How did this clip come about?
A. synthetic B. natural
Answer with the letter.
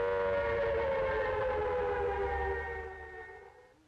B